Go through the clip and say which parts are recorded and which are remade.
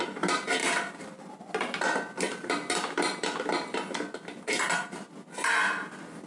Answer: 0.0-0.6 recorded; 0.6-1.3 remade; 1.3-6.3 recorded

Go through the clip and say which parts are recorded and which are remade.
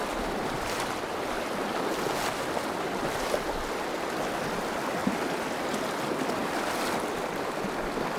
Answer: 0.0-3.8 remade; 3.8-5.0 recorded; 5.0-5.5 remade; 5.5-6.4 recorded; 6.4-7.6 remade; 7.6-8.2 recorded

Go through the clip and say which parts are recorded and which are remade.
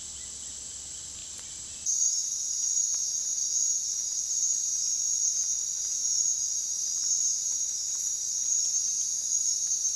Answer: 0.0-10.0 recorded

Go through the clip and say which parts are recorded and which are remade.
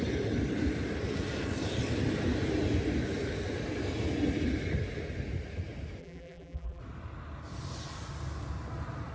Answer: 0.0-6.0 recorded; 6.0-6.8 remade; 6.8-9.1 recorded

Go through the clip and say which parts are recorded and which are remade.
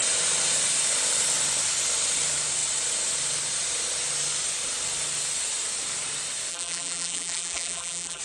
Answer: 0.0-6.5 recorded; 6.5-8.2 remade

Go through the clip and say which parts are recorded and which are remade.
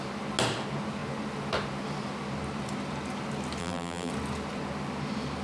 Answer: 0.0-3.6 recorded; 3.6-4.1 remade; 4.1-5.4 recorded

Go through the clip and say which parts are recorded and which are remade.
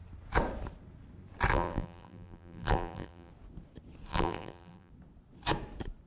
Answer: 0.0-1.5 recorded; 1.5-3.3 remade; 3.3-4.1 recorded; 4.1-4.9 remade; 4.9-6.1 recorded